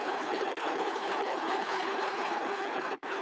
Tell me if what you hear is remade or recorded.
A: remade